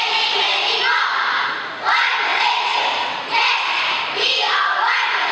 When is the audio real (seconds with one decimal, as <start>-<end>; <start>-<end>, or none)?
0.0-2.3; 2.8-5.3